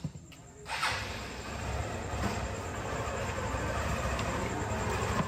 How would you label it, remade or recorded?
recorded